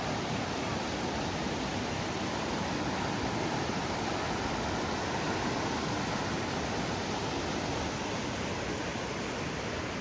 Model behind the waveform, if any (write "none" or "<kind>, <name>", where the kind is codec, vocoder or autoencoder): none